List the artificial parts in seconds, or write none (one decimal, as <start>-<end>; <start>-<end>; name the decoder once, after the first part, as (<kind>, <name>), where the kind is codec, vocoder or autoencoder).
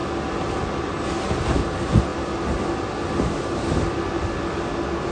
none